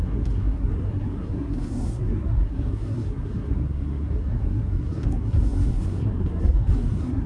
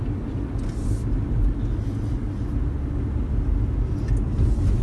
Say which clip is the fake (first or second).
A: first